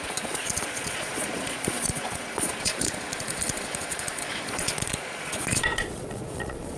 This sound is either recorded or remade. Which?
remade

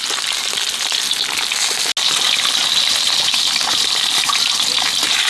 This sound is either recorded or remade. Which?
recorded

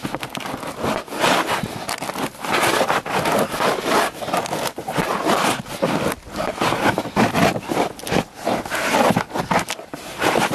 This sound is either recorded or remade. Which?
recorded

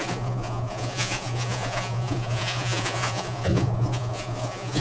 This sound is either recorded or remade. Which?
remade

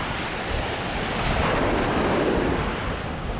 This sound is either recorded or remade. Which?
recorded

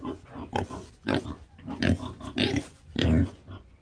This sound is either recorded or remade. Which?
remade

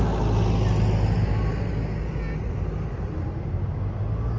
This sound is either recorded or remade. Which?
recorded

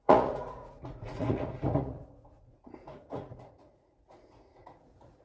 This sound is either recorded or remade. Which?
remade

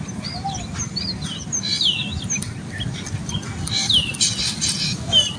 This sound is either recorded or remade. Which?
recorded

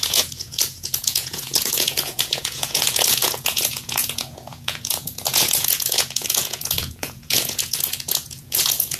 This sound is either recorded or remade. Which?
remade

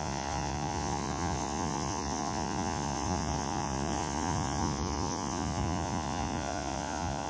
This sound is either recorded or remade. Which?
remade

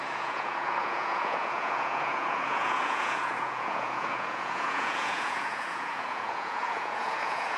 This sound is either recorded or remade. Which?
remade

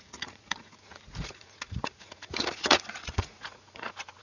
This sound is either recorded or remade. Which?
remade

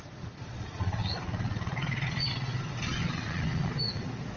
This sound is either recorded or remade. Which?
remade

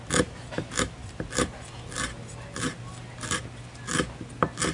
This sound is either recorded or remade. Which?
recorded